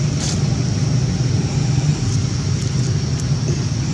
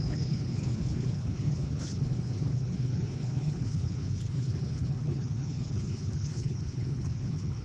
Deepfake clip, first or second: second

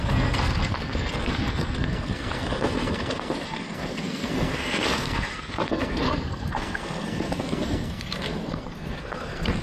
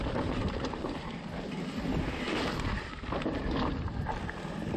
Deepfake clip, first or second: first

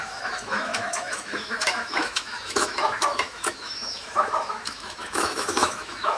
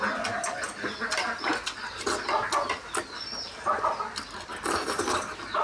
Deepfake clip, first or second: first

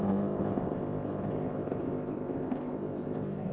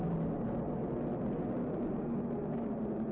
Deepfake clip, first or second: first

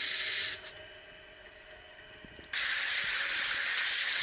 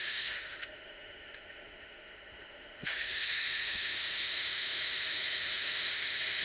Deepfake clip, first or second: second